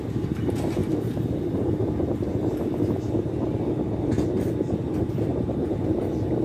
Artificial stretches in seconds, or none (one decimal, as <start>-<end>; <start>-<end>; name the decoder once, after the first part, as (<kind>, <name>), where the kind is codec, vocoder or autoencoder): 0.8-1.5 (vocoder, BigVGAN v2); 5.3-5.8